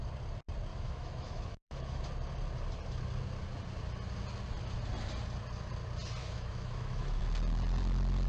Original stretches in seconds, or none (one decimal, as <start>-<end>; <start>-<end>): 0.0-0.7; 2.0-6.2; 7.2-8.3